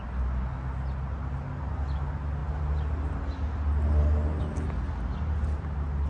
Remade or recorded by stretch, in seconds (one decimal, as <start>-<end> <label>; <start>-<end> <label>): 0.0-6.1 recorded